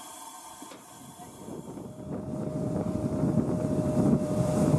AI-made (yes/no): yes